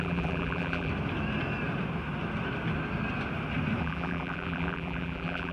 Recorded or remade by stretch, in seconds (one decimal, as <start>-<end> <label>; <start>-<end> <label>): 0.0-0.9 remade; 0.9-3.8 recorded; 3.8-5.5 remade